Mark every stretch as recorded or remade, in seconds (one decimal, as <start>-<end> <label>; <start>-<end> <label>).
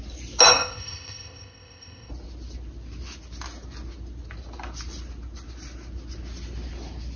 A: 0.0-0.5 recorded; 0.5-2.1 remade; 2.1-7.2 recorded